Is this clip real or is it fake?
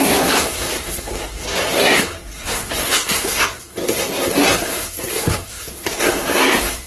fake